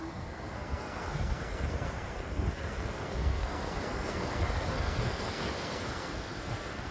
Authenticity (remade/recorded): remade